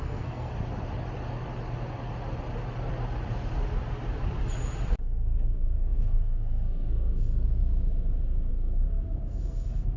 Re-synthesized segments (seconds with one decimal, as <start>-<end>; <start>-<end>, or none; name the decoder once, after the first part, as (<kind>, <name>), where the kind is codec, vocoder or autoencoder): 0.0-0.5 (codec, SNAC); 5.0-7.6; 8.5-10.0